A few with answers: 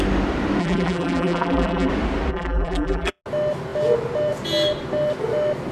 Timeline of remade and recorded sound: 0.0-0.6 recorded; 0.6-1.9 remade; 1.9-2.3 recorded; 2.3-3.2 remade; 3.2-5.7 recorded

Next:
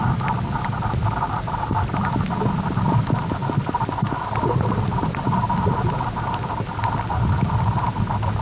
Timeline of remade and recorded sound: 0.0-8.4 recorded

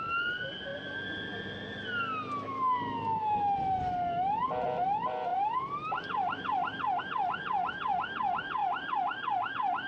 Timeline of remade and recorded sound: 0.0-5.3 recorded; 5.3-7.0 remade; 7.0-8.6 recorded; 8.6-9.5 remade; 9.5-9.9 recorded